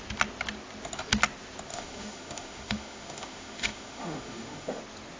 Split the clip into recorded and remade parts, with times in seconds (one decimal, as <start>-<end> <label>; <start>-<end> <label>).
0.0-1.7 recorded; 1.7-4.8 remade; 4.8-5.2 recorded